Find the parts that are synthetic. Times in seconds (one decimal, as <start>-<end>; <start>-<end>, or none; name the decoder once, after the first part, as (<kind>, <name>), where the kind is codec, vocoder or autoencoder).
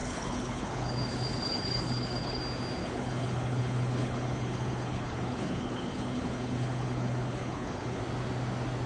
0.0-2.4 (codec, HILCodec); 2.8-8.0